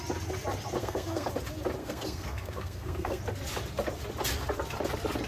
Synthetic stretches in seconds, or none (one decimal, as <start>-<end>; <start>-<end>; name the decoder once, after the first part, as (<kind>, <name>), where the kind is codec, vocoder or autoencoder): 0.8-1.3 (codec, SNAC); 1.8-3.2